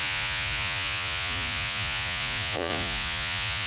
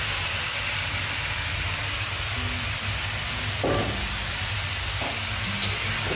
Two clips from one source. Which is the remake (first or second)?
first